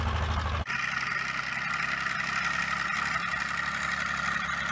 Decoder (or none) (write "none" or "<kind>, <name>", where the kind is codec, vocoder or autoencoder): none